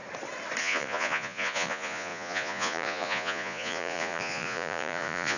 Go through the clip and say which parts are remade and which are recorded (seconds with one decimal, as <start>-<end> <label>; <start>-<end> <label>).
0.0-0.6 recorded; 0.6-5.4 remade